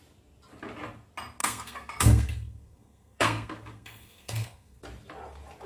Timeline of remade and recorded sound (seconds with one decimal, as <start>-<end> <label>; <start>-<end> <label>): 0.0-1.4 recorded; 1.4-4.8 remade; 4.8-5.7 recorded